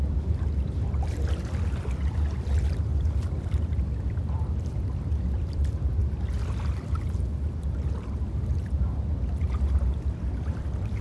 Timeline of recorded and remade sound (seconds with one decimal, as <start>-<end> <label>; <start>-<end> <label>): 0.0-6.0 remade; 6.0-9.5 recorded; 9.5-11.0 remade